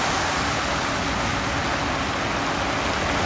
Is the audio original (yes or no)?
yes